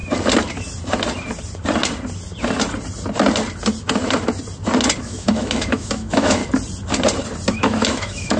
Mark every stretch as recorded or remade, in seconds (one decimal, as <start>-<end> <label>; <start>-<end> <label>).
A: 0.0-5.0 recorded; 5.0-6.4 remade; 6.4-7.5 recorded; 7.5-8.4 remade